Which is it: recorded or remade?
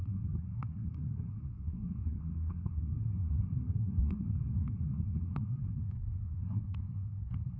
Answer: remade